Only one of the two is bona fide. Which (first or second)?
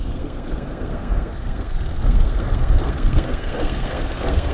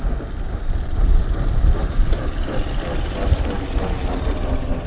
second